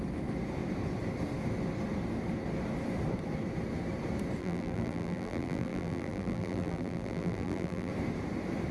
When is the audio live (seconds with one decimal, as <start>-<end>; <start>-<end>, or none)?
0.0-4.4; 7.9-8.7